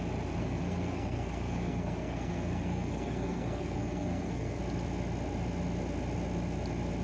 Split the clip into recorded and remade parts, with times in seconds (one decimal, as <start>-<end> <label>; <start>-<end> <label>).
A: 0.0-0.4 recorded; 0.4-4.6 remade; 4.6-7.0 recorded